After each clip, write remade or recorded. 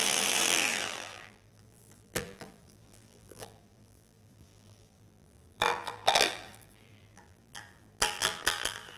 remade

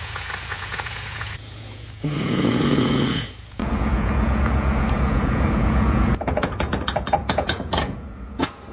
remade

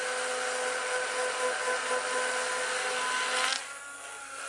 recorded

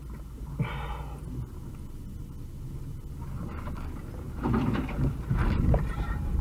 recorded